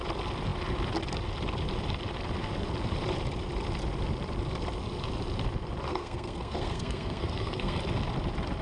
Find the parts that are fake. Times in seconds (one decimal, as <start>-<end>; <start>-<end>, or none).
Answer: 5.9-7.8